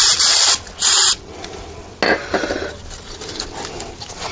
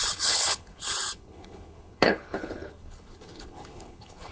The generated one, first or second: second